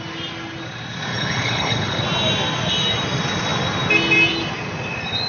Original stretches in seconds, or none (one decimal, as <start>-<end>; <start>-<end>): 0.0-1.1; 2.0-5.3